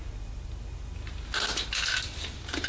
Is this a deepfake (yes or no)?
no